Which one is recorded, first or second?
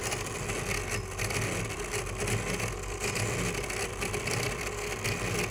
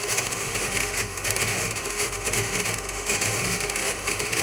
first